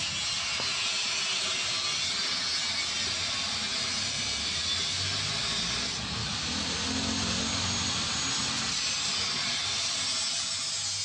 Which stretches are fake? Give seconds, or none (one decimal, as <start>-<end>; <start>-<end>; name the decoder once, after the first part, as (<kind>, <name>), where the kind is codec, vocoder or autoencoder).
none